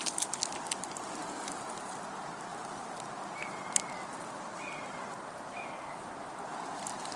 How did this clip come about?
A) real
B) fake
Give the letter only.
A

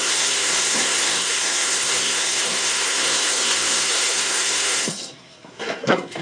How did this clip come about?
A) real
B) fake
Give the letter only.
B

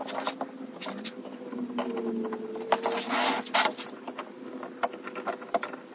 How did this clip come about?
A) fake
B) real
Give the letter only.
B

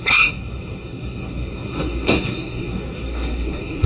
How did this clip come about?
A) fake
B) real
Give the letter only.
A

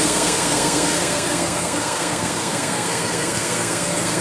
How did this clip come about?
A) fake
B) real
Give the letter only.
A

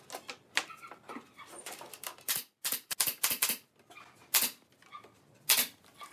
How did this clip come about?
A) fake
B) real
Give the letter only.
B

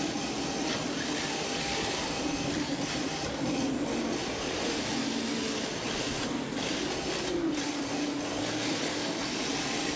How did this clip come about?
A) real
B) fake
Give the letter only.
A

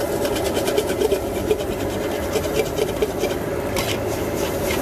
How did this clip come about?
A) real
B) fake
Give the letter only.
A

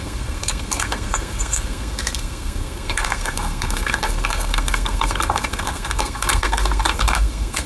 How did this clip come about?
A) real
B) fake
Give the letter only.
B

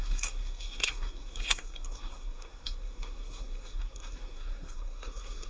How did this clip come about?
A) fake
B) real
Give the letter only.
A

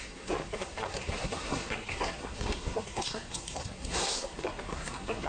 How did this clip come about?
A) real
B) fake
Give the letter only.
B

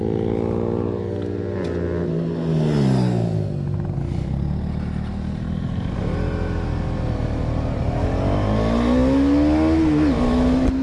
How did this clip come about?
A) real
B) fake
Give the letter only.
A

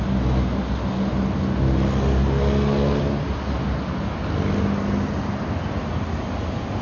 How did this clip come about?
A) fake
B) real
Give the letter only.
B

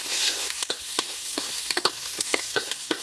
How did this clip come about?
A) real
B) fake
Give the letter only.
B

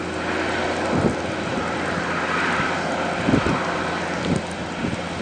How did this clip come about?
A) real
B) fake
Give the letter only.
A